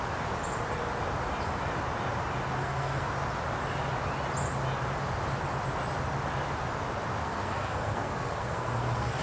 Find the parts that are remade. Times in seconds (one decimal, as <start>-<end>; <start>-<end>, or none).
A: 2.6-3.1; 7.2-9.2